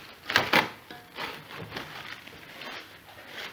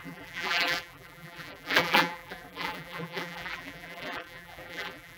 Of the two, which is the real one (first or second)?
first